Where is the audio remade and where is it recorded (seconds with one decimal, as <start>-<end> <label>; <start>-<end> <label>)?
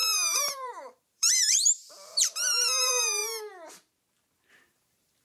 0.0-3.2 remade; 3.2-4.5 recorded; 4.5-5.2 remade